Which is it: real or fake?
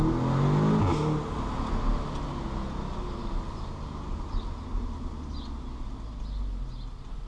real